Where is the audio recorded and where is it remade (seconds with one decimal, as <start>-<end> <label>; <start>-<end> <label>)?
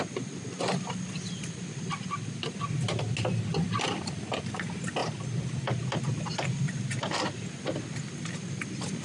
0.0-9.0 recorded